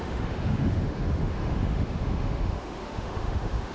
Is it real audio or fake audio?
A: fake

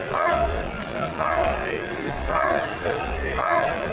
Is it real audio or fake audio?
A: fake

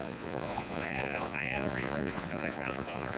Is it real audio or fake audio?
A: fake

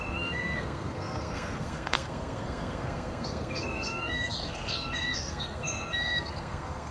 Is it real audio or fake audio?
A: fake